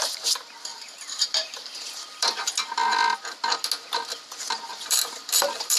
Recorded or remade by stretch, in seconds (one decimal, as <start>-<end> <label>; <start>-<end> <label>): 0.0-0.7 recorded; 0.7-2.5 remade; 2.5-4.7 recorded; 4.7-5.8 remade